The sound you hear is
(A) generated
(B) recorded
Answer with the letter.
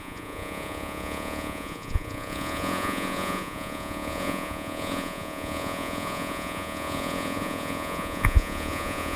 A